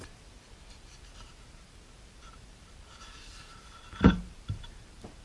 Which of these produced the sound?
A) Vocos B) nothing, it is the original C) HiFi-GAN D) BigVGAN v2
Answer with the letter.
D